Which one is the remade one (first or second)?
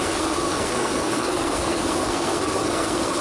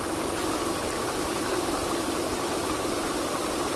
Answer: first